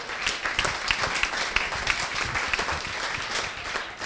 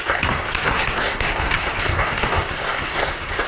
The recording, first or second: first